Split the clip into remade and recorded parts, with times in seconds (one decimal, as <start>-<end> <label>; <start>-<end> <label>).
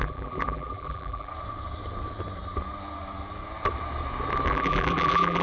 0.0-1.3 remade; 1.3-4.5 recorded; 4.5-5.4 remade